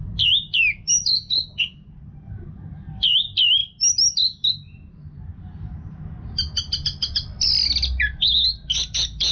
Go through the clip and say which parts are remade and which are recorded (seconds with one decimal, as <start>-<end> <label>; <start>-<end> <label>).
0.0-9.3 recorded